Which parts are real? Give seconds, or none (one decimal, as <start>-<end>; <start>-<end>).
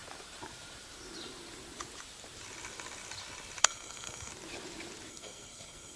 0.0-3.6; 4.3-5.1